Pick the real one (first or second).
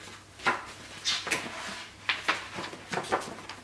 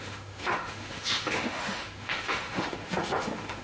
first